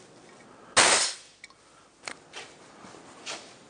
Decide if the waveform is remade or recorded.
recorded